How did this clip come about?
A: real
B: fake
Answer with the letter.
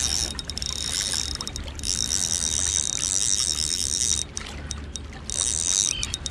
A